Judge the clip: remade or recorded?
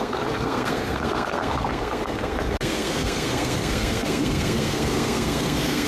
remade